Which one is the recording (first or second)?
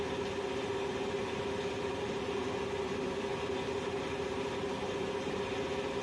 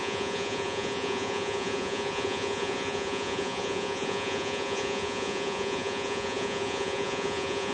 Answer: first